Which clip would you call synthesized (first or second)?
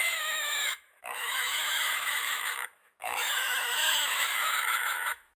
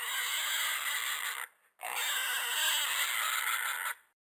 first